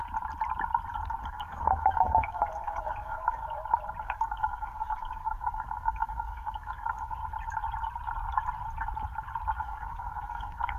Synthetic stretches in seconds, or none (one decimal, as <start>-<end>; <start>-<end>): 1.2-3.4; 4.0-7.2; 9.6-10.8